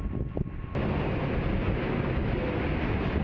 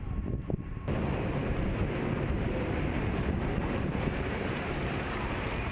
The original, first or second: first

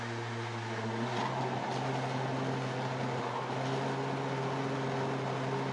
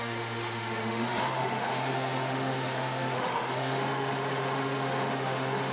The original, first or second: first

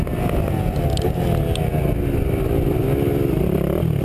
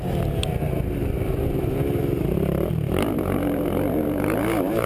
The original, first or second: first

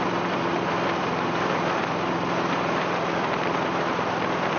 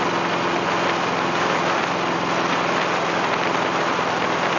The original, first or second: second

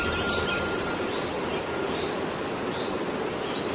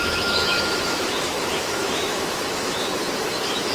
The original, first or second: first